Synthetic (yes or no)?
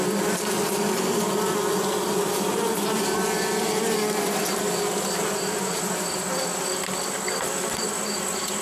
no